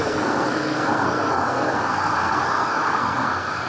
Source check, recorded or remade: remade